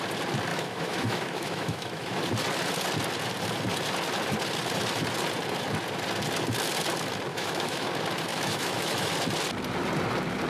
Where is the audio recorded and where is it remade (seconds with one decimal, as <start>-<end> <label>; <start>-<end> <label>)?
0.0-0.5 recorded; 0.5-2.2 remade; 2.2-7.3 recorded; 7.3-7.9 remade; 7.9-8.3 recorded; 8.3-9.1 remade; 9.1-10.5 recorded